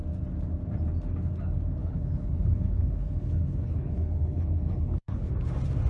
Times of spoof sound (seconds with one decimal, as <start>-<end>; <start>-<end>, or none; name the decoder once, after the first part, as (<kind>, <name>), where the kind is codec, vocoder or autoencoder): 1.8-5.3 (codec, HILCodec)